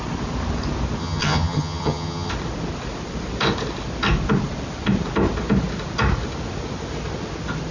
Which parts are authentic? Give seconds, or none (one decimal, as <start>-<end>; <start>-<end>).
0.0-1.0; 2.3-7.7